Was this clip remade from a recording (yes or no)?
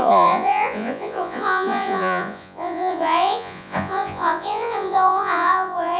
yes